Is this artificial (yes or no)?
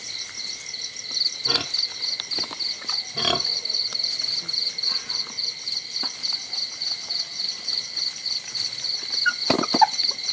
no